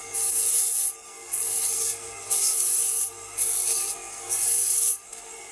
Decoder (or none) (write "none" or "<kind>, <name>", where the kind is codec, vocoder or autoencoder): codec, SNAC